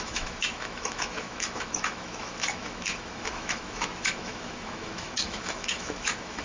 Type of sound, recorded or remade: remade